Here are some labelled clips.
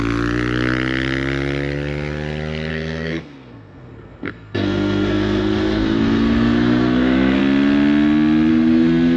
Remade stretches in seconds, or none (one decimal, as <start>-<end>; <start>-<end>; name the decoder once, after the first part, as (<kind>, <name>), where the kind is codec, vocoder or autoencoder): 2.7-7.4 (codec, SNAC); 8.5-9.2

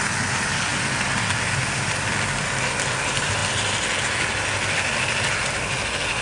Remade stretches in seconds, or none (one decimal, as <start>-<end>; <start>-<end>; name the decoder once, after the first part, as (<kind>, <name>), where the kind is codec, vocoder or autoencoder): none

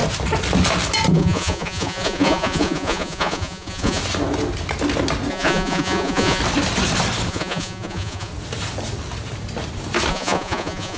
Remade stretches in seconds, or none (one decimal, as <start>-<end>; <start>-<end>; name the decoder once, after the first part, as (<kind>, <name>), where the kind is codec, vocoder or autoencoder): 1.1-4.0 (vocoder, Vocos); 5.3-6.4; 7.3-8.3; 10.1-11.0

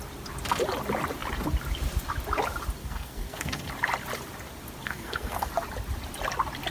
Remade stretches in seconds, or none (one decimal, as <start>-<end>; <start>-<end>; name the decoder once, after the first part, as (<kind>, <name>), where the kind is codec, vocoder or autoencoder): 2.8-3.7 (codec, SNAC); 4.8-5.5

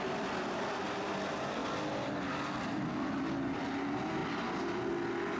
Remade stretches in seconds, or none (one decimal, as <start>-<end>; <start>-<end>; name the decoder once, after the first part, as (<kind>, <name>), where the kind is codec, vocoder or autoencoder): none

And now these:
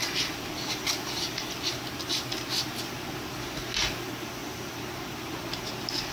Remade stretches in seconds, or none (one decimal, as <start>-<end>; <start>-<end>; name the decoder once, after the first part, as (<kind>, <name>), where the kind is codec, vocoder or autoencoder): none